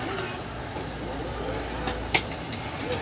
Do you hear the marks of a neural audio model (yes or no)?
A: no